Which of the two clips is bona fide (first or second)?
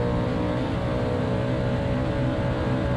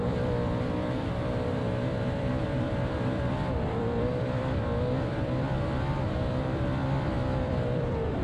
first